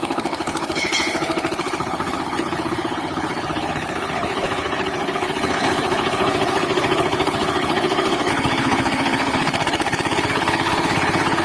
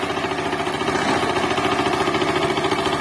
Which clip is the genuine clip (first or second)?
second